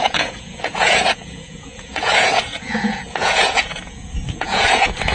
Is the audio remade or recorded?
remade